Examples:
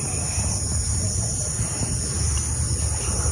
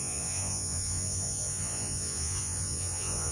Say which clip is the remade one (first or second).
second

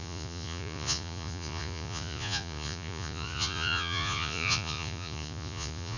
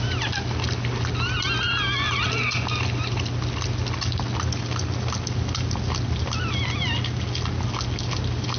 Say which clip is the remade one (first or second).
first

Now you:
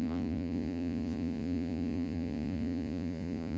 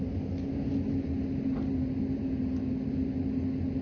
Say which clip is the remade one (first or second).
first